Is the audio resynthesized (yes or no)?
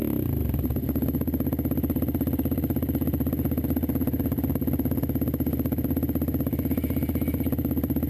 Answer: no